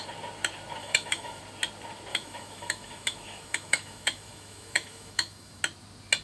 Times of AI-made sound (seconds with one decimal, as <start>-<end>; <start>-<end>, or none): 0.8-1.4; 2.1-5.6